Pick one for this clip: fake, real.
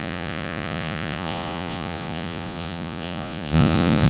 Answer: fake